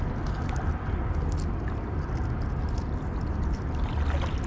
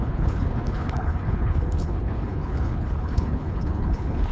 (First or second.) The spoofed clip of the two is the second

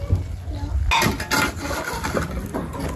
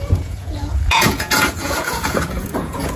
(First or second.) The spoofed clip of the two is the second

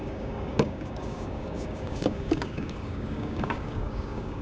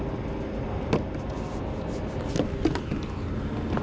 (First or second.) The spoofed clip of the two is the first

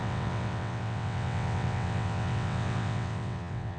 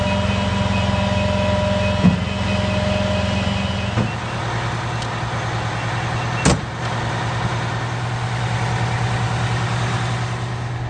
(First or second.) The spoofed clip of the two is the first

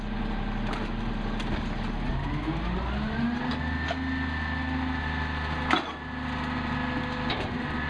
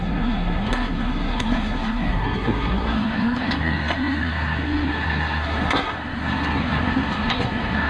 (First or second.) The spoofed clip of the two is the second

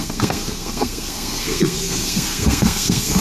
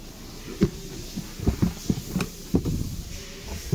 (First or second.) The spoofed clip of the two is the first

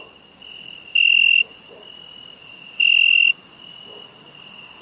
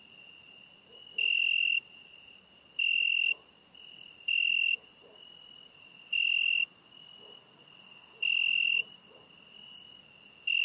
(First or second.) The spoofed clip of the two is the second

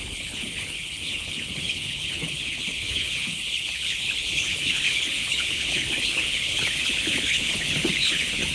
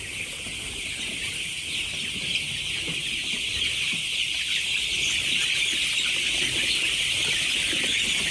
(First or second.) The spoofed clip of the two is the first